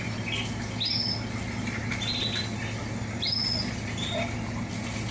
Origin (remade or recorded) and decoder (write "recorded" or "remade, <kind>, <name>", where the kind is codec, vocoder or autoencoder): recorded